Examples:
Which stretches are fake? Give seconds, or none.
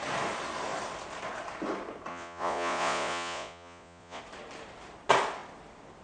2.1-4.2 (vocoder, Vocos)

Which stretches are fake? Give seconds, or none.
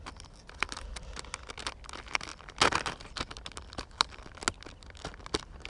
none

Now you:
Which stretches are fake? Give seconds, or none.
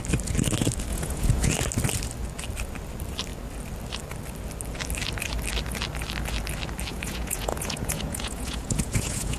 0.9-1.5 (vocoder, Vocos); 6.9-9.4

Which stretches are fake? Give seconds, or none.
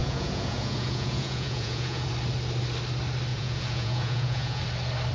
0.0-2.1 (vocoder, Vocos); 3.3-4.6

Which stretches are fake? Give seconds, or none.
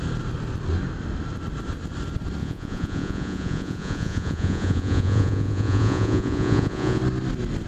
2.4-7.0 (vocoder, Vocos)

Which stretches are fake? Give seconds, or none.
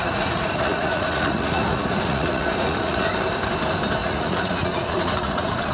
0.0-3.1 (vocoder, Vocos); 4.0-5.7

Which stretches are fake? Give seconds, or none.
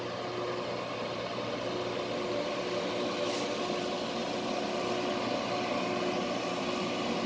none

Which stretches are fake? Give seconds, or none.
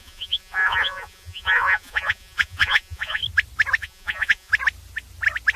0.0-3.2 (vocoder, Vocos); 3.8-4.5